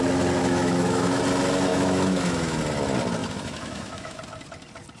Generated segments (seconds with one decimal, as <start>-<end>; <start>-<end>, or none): 0.4-1.2; 1.7-2.6; 3.2-4.2